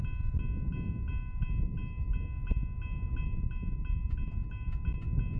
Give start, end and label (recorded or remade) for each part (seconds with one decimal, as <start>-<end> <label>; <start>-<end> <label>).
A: 0.0-5.4 recorded